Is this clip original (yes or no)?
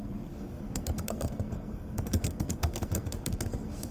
no